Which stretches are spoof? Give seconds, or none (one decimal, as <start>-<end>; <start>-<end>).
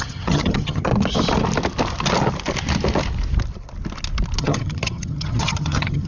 0.0-0.9; 4.4-6.1